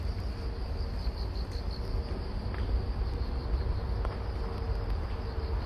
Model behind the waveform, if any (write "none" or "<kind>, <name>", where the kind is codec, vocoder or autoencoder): none